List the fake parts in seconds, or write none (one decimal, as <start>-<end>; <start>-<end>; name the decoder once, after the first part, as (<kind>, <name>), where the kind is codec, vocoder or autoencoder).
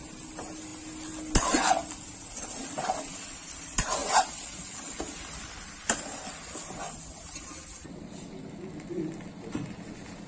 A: none